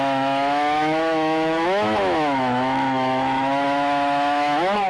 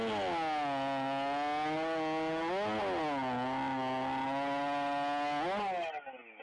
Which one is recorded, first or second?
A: second